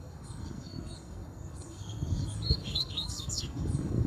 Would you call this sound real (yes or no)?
no